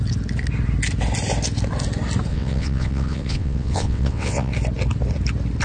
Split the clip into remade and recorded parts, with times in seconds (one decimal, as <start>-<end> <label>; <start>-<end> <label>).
0.0-2.3 recorded; 2.3-4.5 remade; 4.5-5.6 recorded

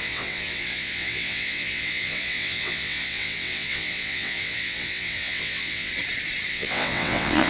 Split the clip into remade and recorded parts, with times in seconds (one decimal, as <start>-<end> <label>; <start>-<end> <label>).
0.0-5.9 remade; 5.9-6.5 recorded; 6.5-7.5 remade

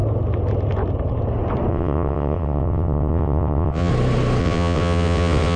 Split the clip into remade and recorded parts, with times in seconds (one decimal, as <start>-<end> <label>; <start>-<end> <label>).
0.0-1.7 recorded; 1.7-3.9 remade; 3.9-4.4 recorded; 4.4-5.6 remade

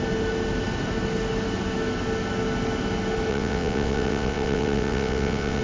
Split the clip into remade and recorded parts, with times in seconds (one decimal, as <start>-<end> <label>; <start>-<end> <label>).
0.0-3.3 recorded; 3.3-5.6 remade

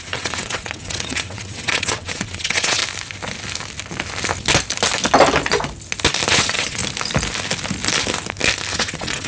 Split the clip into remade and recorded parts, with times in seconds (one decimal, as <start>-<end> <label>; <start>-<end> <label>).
0.0-2.8 remade; 2.8-6.3 recorded; 6.3-6.8 remade; 6.8-8.7 recorded; 8.7-9.3 remade

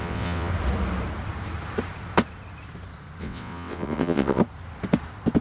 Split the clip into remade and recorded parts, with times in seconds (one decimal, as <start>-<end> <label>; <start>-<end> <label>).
0.0-0.5 remade; 0.5-3.2 recorded; 3.2-4.4 remade; 4.4-5.4 recorded

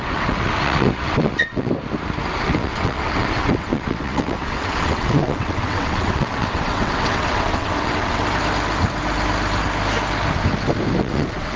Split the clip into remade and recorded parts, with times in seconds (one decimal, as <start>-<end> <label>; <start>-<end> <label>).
0.0-1.7 remade; 1.7-2.4 recorded; 2.4-8.2 remade; 8.2-11.0 recorded; 11.0-11.6 remade